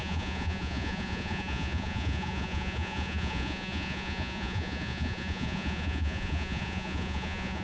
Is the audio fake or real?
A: fake